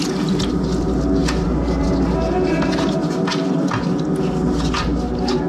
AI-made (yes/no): no